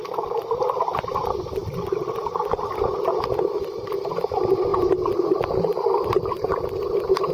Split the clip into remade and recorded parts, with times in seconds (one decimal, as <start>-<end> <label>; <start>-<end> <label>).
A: 0.0-7.3 recorded